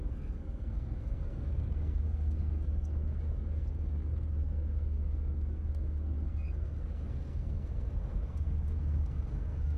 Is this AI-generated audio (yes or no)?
yes